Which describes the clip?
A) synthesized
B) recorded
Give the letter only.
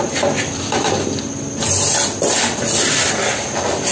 B